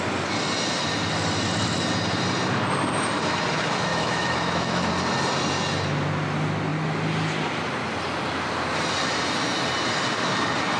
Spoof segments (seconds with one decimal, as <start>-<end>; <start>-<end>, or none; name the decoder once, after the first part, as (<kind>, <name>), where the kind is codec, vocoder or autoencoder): 3.9-4.9 (autoencoder, DAC-VAE)